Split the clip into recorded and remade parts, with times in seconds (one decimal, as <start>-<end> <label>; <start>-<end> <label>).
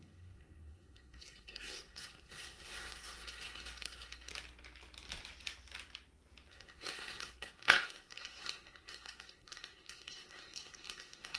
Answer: 0.0-4.3 remade; 4.3-6.5 recorded; 6.5-11.4 remade